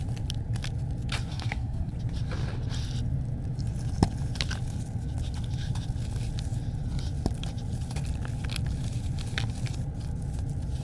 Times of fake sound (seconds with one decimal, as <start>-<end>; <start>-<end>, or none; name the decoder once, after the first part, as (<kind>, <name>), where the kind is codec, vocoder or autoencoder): 1.3-1.9 (codec, SNAC)